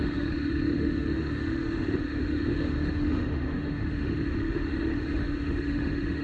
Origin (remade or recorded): remade